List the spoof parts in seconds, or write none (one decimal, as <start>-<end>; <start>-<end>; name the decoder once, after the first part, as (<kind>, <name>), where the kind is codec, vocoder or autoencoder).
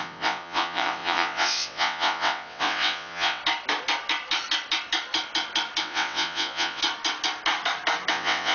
0.0-3.4 (vocoder, WaveNeXt); 5.8-6.8; 8.1-8.5